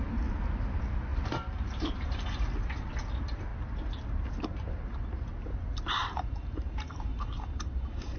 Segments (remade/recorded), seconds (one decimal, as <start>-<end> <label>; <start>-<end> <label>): 0.0-1.1 recorded; 1.1-2.9 remade; 2.9-6.0 recorded; 6.0-8.2 remade